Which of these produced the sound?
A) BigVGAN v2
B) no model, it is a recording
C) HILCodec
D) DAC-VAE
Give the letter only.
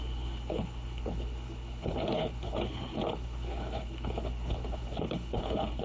C